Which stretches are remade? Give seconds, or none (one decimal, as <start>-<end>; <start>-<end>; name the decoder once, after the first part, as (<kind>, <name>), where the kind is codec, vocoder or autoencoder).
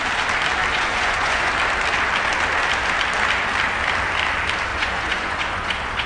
0.7-1.5 (vocoder, Vocos); 4.7-6.1